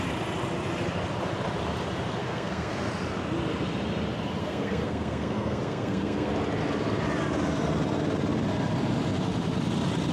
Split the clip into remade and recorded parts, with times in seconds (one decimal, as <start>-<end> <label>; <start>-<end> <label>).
0.0-2.2 recorded; 2.2-2.9 remade; 2.9-4.4 recorded; 4.4-6.3 remade; 6.3-10.1 recorded

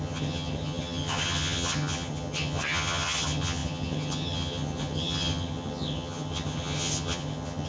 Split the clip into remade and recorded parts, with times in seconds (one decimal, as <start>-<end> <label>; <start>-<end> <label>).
0.0-7.7 remade